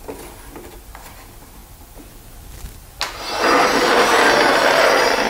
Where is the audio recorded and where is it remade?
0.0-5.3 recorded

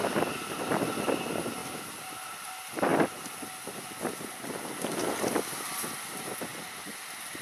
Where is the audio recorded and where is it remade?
0.0-7.4 recorded

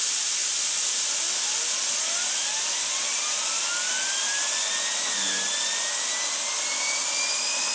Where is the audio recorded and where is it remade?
0.0-7.7 recorded